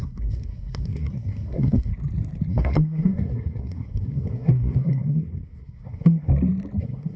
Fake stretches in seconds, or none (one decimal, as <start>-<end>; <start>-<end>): 0.0-1.9; 2.5-6.3; 6.8-7.2